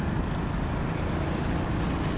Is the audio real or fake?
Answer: real